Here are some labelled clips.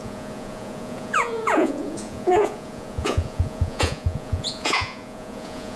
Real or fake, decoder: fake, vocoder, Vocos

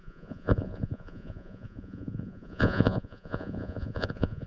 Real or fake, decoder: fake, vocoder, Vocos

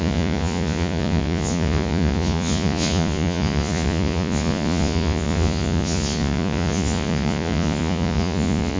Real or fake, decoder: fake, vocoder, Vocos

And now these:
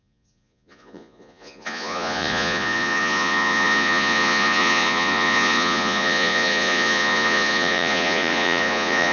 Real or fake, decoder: fake, vocoder, Vocos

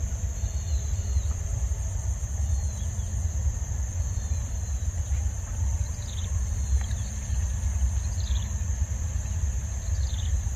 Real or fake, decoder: real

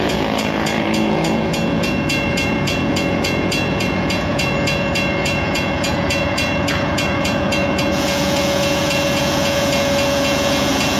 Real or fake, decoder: fake, vocoder, Vocos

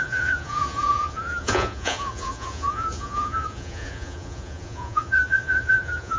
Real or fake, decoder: fake, vocoder, Vocos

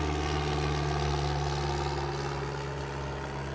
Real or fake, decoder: real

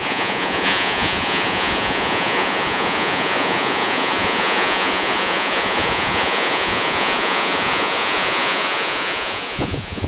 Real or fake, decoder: fake, vocoder, Vocos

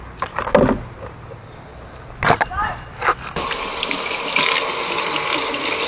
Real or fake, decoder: real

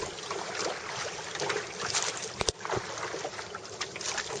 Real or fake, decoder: real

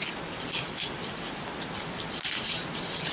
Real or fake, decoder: real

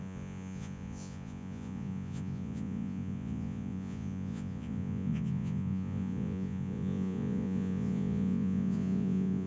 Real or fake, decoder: fake, vocoder, Vocos